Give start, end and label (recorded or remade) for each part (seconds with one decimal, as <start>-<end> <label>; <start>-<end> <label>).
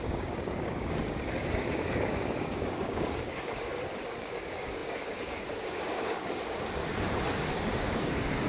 0.0-3.7 remade; 3.7-4.2 recorded; 4.2-6.8 remade; 6.8-7.5 recorded; 7.5-8.5 remade